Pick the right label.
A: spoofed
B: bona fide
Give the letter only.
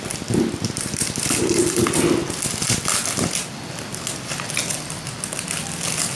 B